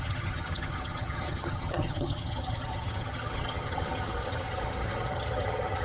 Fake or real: fake